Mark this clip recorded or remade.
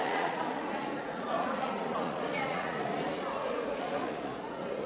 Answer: remade